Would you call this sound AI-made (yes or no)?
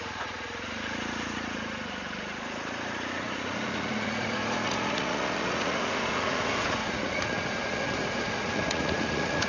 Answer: yes